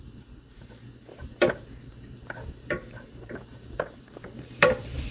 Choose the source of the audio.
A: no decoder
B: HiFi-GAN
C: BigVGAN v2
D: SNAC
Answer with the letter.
C